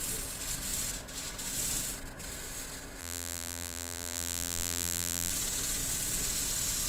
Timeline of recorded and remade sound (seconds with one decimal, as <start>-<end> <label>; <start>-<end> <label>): 0.0-3.0 recorded; 3.0-5.3 remade; 5.3-6.9 recorded